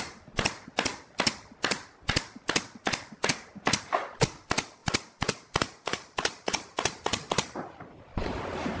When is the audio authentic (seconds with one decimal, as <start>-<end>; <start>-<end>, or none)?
0.0-4.8; 8.4-8.8